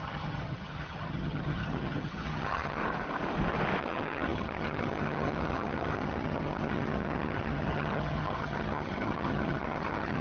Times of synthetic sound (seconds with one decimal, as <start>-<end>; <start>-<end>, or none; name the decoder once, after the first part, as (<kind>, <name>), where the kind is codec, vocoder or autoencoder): 0.0-2.8 (vocoder, HiFi-GAN); 3.8-10.2